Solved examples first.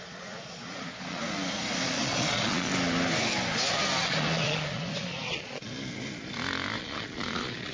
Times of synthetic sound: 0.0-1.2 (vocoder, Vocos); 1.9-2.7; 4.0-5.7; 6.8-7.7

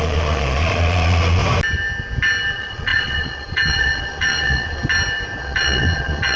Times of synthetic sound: 0.0-1.4 (vocoder, Vocos); 2.5-4.8; 5.4-6.4

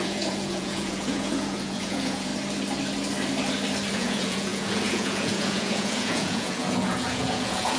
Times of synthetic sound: 0.0-2.3 (vocoder, Vocos); 3.9-7.8

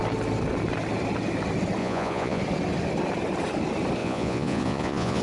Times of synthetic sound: 1.8-2.4 (vocoder, Vocos); 4.0-5.2

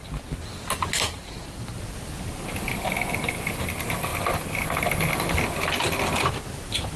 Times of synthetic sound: none

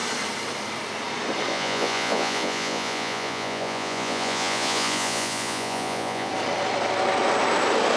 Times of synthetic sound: 1.5-6.3 (vocoder, Vocos)

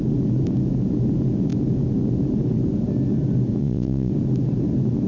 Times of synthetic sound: 3.6-4.1 (vocoder, Vocos)